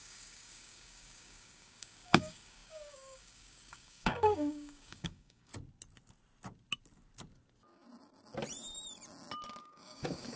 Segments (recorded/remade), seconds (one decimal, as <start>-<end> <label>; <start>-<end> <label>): 0.0-5.5 remade; 5.5-9.6 recorded; 9.6-10.4 remade